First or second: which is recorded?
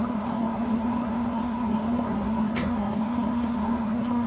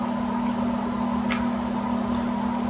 second